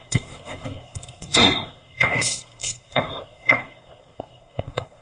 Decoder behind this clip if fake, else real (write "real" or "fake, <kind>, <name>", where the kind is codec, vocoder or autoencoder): fake, codec, SNAC